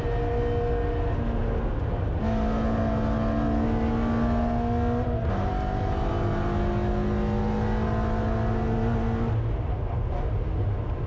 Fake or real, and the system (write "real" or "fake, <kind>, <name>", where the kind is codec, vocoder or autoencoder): real